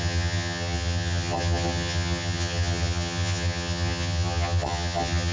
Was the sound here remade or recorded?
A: remade